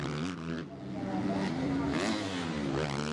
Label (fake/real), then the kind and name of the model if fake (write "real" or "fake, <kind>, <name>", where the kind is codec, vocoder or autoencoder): real